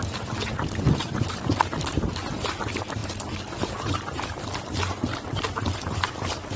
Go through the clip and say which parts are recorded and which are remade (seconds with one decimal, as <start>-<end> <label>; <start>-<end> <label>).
0.0-6.6 recorded